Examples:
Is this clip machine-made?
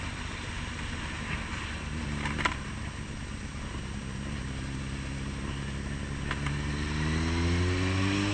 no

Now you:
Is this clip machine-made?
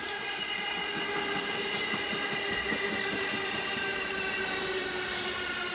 no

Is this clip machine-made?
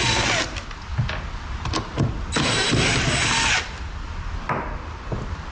no